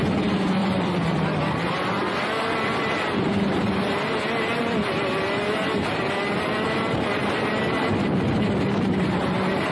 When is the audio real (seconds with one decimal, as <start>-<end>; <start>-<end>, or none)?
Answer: 0.0-0.6; 1.4-9.7